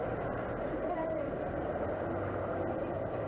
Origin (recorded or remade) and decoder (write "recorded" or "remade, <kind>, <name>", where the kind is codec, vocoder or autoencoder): remade, vocoder, BigVGAN v2